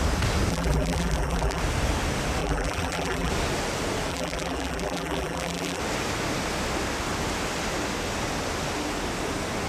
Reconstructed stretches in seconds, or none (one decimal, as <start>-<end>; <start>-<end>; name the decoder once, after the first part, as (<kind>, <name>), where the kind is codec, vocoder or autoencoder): 0.5-1.6 (vocoder, BigVGAN v2); 2.4-3.3; 4.1-5.8